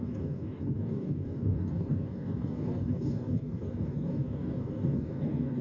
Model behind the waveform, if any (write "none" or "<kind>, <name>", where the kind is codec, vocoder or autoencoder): codec, DAC